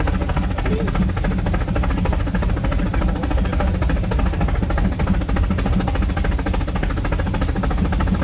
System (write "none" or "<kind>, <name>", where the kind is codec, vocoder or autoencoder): none